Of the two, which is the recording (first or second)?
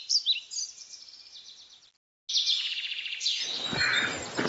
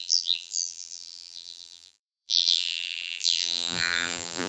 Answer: first